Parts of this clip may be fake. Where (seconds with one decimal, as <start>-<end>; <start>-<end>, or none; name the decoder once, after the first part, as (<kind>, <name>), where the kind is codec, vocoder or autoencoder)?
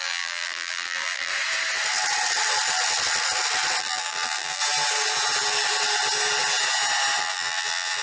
0.0-1.3 (vocoder, BigVGAN v2); 3.8-4.6; 7.2-8.0